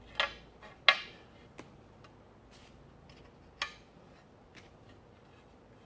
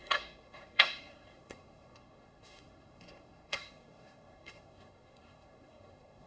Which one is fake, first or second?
second